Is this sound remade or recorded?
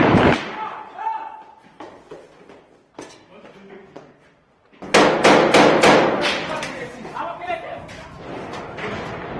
recorded